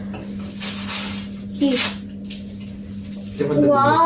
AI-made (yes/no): no